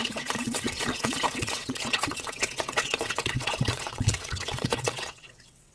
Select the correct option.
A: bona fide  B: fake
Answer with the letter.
B